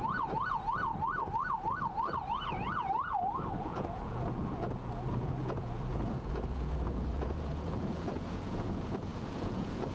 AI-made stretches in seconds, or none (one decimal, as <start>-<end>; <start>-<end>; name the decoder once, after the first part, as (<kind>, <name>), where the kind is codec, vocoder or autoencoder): 0.0-0.9 (vocoder, Vocos); 3.6-9.9